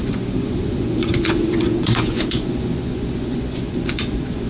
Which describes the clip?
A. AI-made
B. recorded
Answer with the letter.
A